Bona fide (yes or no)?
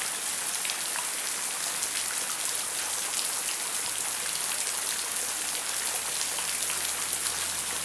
yes